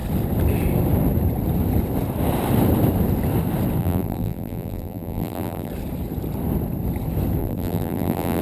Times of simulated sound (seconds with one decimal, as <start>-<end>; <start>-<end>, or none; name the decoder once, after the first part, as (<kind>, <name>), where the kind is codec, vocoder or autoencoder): 3.8-5.7 (vocoder, BigVGAN v2); 7.4-8.4